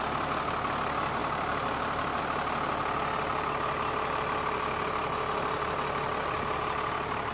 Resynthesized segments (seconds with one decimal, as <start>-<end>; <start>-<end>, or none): none